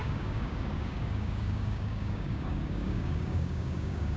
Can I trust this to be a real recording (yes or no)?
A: no